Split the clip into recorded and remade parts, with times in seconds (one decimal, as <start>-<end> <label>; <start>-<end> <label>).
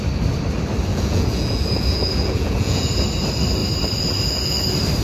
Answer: 0.0-0.9 recorded; 0.9-2.9 remade; 2.9-5.0 recorded